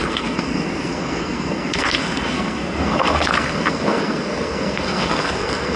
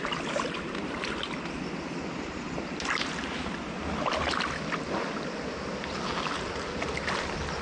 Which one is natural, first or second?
second